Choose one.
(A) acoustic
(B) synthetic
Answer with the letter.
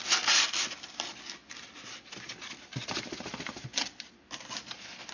A